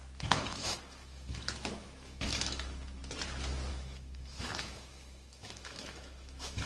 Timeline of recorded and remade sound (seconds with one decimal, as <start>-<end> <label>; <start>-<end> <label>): 0.0-3.0 remade; 3.0-3.7 recorded; 3.7-6.7 remade